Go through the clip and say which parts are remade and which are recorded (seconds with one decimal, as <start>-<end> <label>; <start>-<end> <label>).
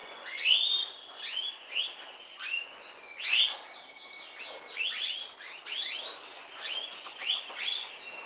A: 0.0-1.7 remade; 1.7-2.3 recorded; 2.3-3.5 remade; 3.5-6.3 recorded; 6.3-7.9 remade; 7.9-8.3 recorded